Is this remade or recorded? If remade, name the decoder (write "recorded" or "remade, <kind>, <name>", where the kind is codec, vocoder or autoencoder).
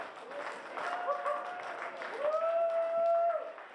recorded